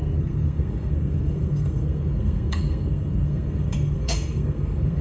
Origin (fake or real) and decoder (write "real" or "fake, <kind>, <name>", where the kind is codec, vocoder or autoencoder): fake, codec, SNAC